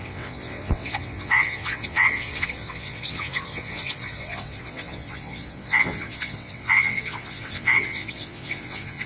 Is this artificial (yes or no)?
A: yes